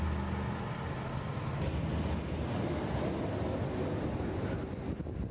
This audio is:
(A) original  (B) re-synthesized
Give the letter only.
A